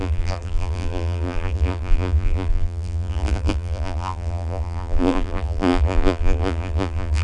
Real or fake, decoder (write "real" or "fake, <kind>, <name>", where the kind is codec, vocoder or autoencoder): fake, vocoder, BigVGAN v2